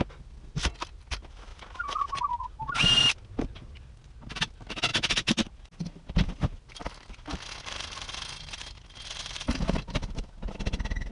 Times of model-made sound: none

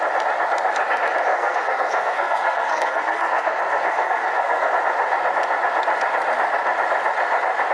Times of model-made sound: 1.3-4.7 (codec, SNAC)

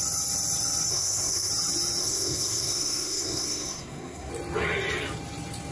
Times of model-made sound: 0.9-1.5 (codec, SNAC); 2.0-4.3

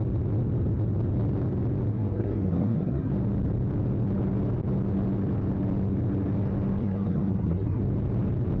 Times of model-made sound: 1.9-3.1 (codec, SNAC); 6.8-7.8

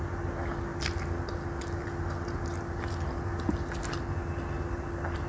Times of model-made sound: none

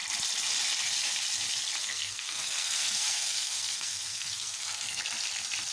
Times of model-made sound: 1.8-5.0 (codec, SNAC)